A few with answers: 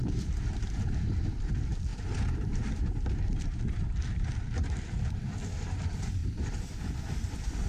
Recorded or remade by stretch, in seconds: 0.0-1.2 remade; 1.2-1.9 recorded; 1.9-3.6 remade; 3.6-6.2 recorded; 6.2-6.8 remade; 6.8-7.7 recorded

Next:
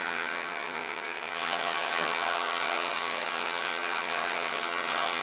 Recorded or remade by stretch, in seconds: 0.0-5.2 remade

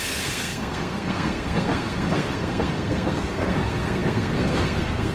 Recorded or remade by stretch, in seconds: 0.0-5.1 remade